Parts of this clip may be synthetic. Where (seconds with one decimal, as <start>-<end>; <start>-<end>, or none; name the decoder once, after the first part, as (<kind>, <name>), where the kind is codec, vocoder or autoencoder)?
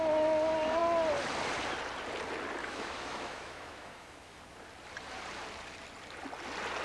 2.6-4.4 (autoencoder, DAC-VAE)